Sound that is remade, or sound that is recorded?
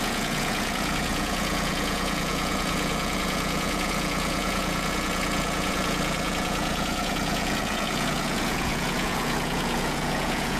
remade